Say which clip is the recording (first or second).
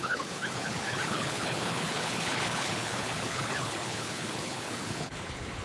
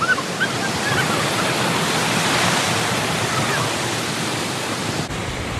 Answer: second